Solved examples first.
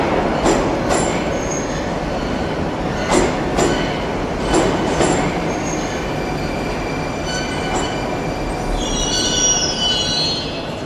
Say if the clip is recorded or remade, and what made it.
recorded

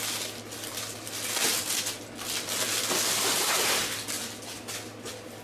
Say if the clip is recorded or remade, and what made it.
recorded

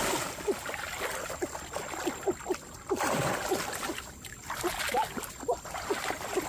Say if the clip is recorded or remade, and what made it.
recorded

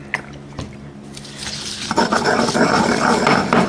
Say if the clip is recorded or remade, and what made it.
recorded